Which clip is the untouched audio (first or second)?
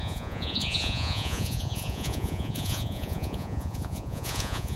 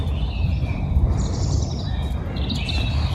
second